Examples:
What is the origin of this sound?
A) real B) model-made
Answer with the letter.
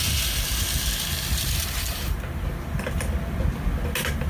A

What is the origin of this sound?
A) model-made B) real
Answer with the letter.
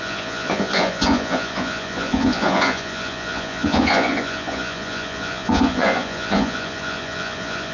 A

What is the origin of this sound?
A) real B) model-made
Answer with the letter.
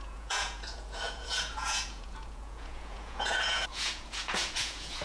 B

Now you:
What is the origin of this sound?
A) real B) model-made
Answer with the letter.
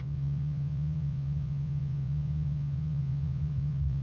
B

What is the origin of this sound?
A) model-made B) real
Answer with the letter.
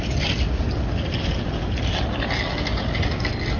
B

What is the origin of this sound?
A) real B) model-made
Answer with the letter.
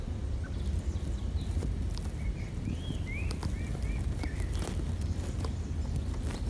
A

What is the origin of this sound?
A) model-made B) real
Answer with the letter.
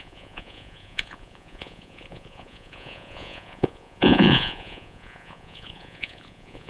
A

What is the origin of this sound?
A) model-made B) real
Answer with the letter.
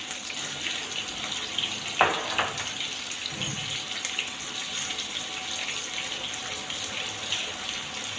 B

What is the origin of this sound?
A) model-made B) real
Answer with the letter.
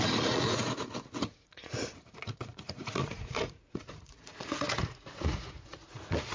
A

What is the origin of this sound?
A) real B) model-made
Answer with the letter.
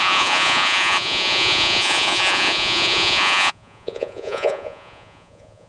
B